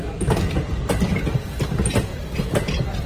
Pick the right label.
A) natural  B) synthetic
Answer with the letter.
A